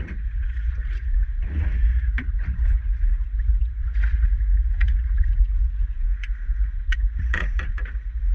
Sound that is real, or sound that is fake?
fake